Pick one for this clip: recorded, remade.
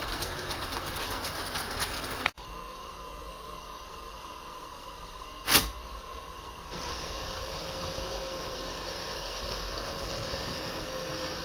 remade